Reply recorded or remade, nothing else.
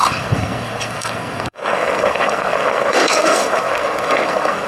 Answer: remade